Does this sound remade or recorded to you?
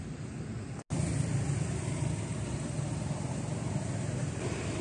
recorded